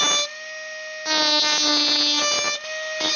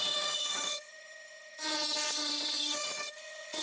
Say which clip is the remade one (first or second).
second